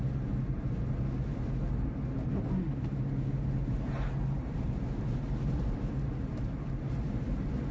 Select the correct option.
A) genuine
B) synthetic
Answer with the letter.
A